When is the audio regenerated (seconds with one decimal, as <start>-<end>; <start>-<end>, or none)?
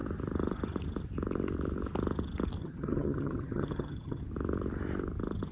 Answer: 2.6-4.2